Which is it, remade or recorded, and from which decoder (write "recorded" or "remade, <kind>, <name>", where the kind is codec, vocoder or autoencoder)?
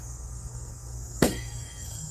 remade, codec, SNAC